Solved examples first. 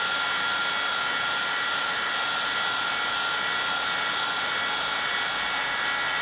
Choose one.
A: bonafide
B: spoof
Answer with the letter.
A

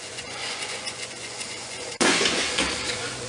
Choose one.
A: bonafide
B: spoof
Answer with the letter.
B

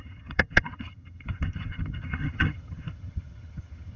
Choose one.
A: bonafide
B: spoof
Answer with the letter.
B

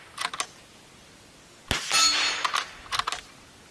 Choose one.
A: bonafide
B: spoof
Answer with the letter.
A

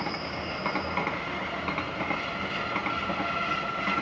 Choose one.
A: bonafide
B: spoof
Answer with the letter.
A